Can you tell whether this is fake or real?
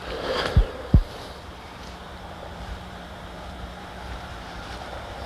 fake